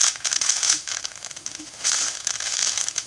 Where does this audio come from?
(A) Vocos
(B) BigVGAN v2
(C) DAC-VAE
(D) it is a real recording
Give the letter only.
C